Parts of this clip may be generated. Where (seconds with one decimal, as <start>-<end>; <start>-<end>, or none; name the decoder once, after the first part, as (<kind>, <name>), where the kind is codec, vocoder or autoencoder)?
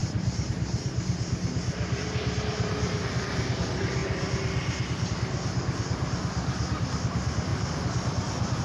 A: 0.0-0.5 (vocoder, BigVGAN v2); 7.5-8.6